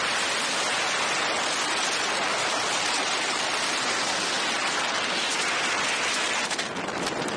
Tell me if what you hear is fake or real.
real